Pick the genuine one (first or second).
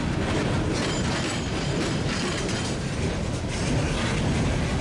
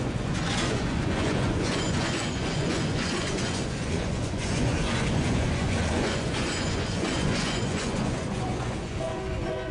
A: first